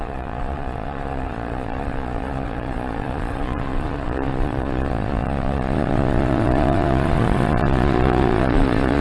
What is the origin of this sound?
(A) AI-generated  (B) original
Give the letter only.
A